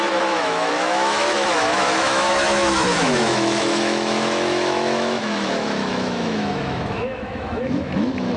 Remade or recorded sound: remade